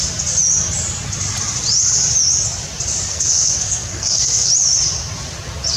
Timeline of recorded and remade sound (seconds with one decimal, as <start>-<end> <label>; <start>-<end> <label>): 0.0-3.1 recorded; 3.1-4.5 remade; 4.5-5.8 recorded